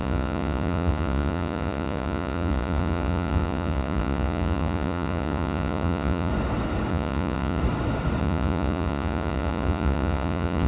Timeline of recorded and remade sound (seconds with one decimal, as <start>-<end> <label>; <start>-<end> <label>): 0.0-6.3 remade; 6.3-6.9 recorded; 6.9-7.6 remade; 7.6-8.2 recorded; 8.2-10.7 remade